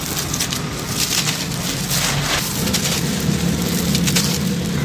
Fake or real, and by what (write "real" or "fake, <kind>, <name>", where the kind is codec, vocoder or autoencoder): real